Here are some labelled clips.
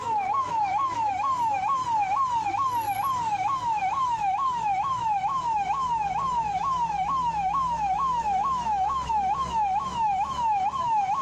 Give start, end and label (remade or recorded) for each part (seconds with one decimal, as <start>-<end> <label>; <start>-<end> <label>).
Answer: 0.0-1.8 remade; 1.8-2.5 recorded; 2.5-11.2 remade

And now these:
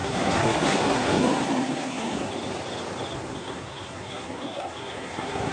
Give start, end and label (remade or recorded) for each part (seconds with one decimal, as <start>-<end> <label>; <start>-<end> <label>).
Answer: 0.0-2.3 remade; 2.3-3.3 recorded; 3.3-5.5 remade

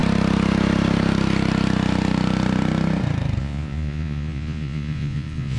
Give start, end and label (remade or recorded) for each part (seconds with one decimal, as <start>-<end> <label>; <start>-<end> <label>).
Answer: 0.0-3.4 recorded; 3.4-5.6 remade